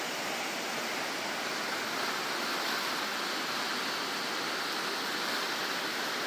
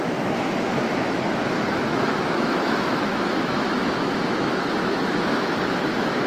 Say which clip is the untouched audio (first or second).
first